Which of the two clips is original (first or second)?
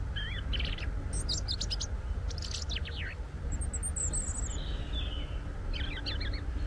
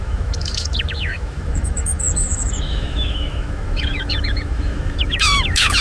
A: first